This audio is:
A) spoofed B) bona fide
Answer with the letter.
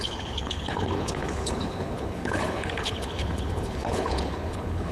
A